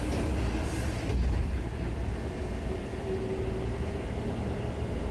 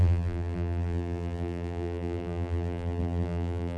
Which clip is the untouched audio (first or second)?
first